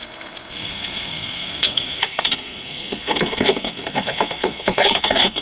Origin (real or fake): fake